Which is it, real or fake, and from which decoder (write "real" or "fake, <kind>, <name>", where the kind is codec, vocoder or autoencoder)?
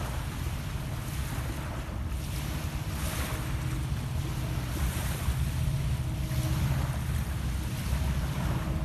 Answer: real